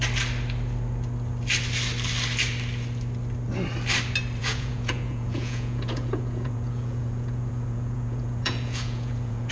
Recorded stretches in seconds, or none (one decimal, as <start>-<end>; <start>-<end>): 0.0-4.4